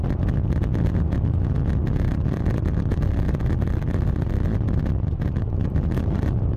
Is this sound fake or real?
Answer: real